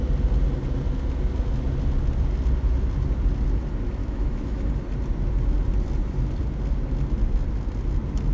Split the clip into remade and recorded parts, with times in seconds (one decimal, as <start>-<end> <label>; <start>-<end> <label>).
0.0-4.0 recorded; 4.0-4.7 remade; 4.7-8.3 recorded